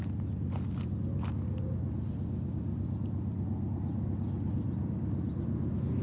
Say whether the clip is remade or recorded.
recorded